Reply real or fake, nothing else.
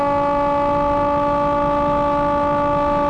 real